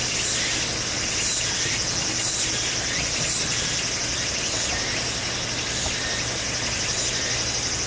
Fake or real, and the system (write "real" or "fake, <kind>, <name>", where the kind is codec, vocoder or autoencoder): real